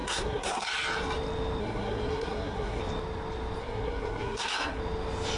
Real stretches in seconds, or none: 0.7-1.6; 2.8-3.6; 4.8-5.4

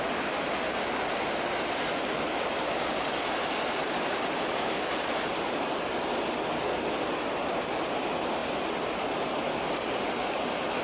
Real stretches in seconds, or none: 0.0-10.8

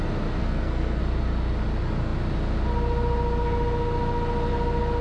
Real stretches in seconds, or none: 0.0-0.4; 1.0-5.0

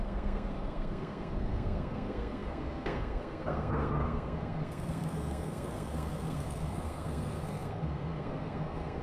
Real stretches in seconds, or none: none

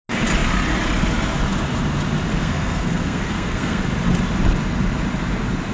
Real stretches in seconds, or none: 0.0-2.3; 3.8-5.7

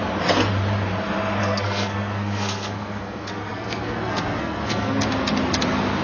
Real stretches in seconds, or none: 0.0-1.4; 5.0-6.0

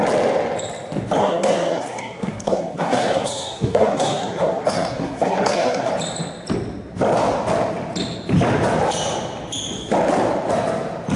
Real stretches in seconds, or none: 0.0-1.2; 5.9-11.2